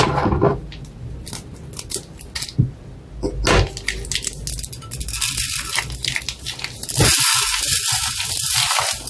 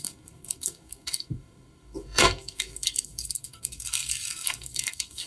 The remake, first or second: second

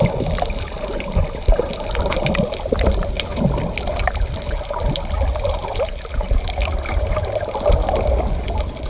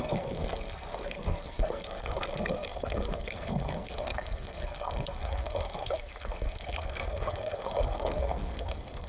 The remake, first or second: second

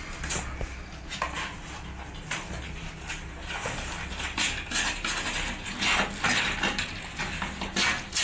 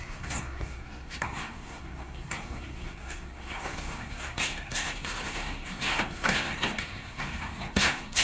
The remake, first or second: second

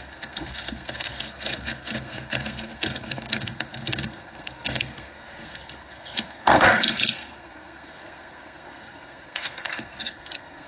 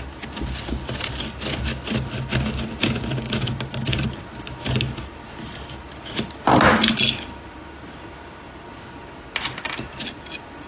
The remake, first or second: first